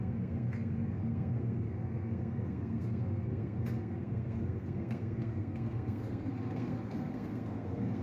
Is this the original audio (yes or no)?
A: no